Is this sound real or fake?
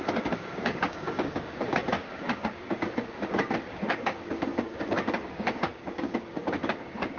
fake